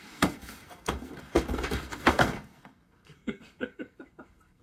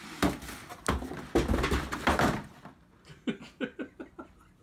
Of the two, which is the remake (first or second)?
first